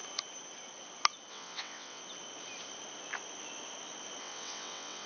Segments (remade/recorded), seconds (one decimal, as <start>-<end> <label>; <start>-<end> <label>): 0.0-1.3 recorded; 1.3-2.0 remade; 2.0-4.2 recorded; 4.2-5.1 remade